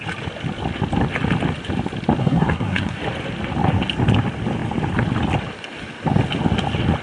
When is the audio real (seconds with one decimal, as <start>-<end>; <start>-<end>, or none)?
0.0-2.2; 3.0-7.0